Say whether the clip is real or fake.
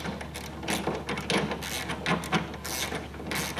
real